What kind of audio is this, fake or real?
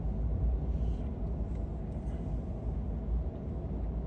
real